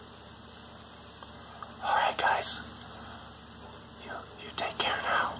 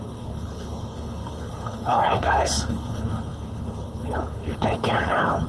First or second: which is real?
first